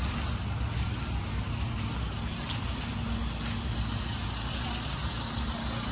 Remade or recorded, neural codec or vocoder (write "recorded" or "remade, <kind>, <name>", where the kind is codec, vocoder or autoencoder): recorded